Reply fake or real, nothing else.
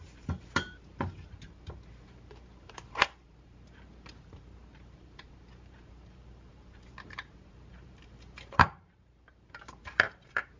fake